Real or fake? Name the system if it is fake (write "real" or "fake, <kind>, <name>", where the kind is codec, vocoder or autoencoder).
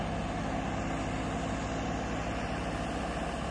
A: real